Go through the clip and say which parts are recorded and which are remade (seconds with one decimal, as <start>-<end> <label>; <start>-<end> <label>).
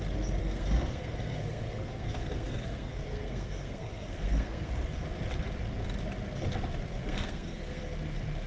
0.0-0.4 recorded; 0.4-4.7 remade; 4.7-7.0 recorded; 7.0-7.8 remade; 7.8-8.5 recorded